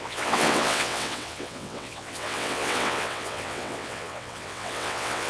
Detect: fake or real fake